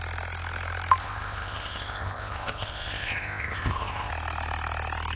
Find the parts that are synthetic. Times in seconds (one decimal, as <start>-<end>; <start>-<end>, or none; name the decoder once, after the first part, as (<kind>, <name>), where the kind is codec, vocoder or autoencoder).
1.0-4.1 (codec, ZipCodec)